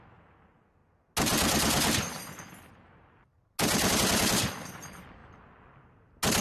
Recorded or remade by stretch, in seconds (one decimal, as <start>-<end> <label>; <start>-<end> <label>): 0.0-6.4 recorded